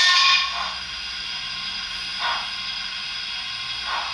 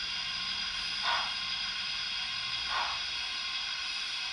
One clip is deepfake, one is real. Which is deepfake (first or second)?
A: second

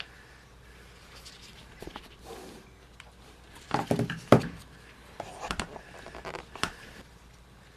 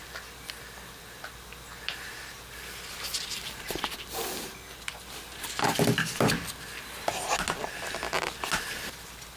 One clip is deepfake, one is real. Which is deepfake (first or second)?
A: first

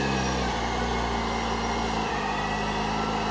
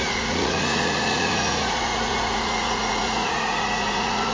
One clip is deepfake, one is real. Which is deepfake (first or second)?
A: second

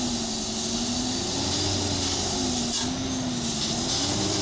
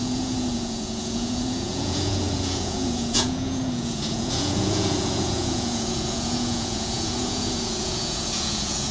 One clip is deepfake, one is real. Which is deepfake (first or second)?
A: second